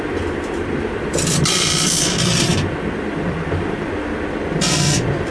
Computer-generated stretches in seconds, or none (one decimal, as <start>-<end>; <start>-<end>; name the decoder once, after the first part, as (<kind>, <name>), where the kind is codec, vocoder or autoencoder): 0.0-5.3 (vocoder, BigVGAN v2)